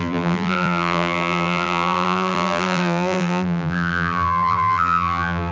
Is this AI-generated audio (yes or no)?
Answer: yes